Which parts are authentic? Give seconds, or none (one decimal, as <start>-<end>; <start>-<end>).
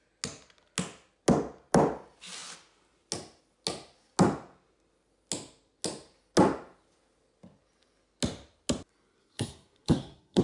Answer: 0.0-9.2